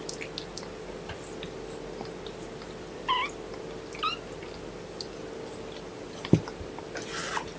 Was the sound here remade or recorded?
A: recorded